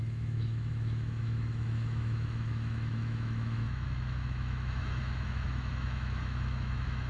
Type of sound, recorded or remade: remade